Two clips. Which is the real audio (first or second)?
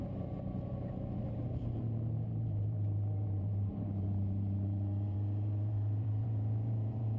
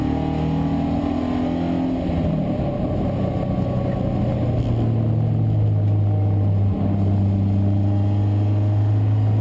second